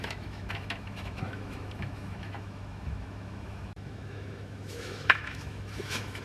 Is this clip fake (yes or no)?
yes